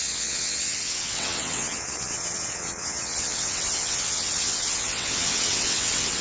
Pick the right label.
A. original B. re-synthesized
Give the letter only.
B